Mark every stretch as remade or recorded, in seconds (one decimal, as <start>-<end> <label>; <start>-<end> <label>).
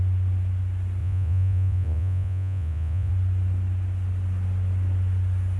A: 0.0-1.0 recorded; 1.0-3.1 remade; 3.1-5.6 recorded